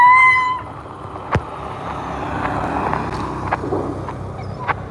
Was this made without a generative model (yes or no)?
yes